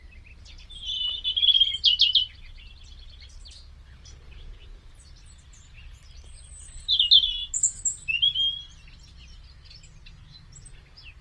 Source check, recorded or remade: recorded